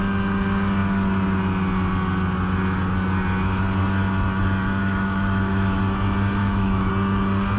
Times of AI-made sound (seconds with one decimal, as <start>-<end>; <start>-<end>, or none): 4.8-5.8; 6.4-6.9